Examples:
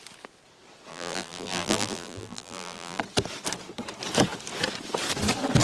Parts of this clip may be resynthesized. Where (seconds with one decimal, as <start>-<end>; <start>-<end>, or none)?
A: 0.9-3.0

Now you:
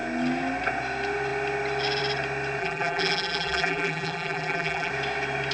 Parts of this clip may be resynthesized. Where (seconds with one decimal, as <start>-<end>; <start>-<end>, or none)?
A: 2.6-4.9

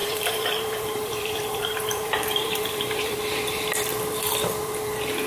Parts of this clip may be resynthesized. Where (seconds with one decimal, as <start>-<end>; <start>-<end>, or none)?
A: 0.0-3.2